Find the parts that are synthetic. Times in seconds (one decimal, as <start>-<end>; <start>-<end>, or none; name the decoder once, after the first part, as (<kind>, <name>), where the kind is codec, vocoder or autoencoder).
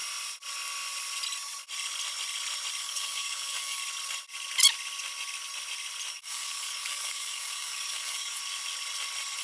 2.8-3.8 (codec, DAC); 6.1-8.4